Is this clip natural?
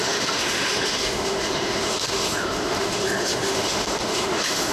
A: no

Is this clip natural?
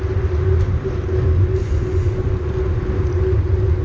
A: yes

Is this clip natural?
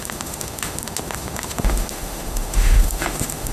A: no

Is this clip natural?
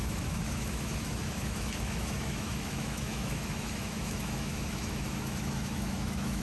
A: no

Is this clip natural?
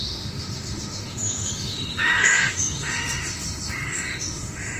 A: no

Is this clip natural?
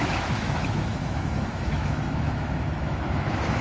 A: no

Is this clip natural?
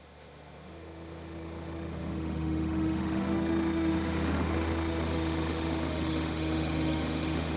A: no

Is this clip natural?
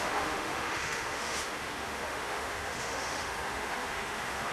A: no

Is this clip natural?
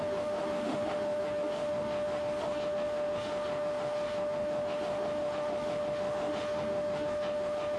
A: no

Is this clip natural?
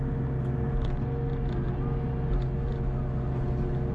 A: yes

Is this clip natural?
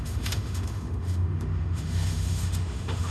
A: no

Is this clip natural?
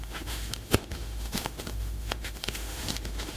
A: no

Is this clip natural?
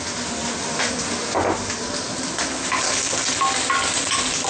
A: yes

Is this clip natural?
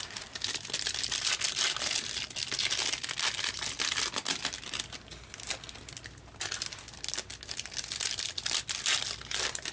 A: yes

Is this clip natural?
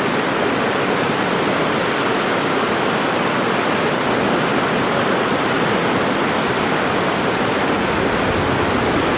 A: yes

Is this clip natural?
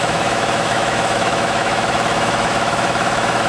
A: no